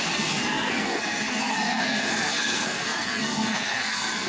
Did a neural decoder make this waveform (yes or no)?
yes